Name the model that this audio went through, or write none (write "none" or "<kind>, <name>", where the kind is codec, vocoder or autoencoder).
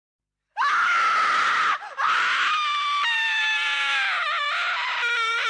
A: vocoder, BigVGAN v2